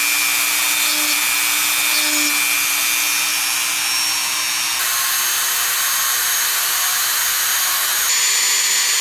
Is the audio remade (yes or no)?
no